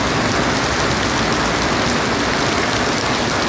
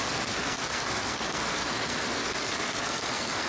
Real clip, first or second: first